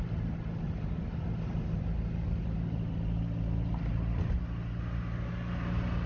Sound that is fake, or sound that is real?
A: real